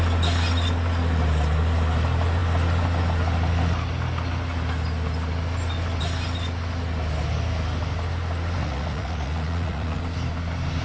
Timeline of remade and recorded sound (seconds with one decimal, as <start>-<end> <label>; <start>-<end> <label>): 0.0-8.6 recorded; 8.6-10.0 remade; 10.0-10.8 recorded